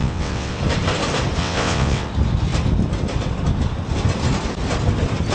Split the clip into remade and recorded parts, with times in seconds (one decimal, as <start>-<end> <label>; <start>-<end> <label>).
0.0-0.6 remade; 0.6-1.4 recorded; 1.4-2.1 remade; 2.1-5.3 recorded